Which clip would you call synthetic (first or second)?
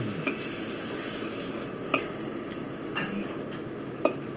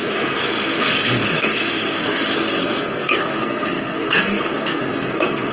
second